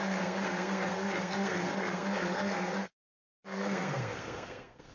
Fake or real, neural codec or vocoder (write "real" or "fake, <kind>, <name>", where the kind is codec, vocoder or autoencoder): fake, codec, SNAC